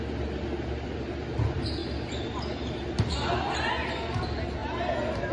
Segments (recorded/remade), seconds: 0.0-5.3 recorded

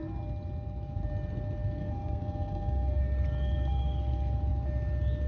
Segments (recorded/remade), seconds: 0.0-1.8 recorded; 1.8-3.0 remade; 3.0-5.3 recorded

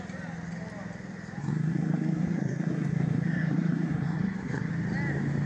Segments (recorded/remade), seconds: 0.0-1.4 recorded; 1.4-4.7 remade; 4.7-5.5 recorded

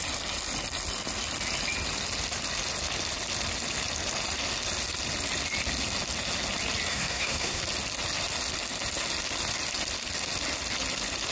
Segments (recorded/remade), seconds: 0.0-6.9 recorded; 6.9-7.6 remade; 7.6-11.3 recorded

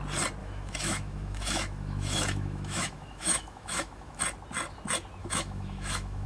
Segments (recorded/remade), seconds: 0.0-0.4 recorded; 0.4-4.2 remade; 4.2-5.2 recorded; 5.2-6.3 remade